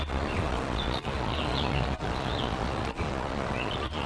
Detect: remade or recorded remade